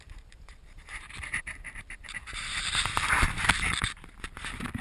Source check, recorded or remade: remade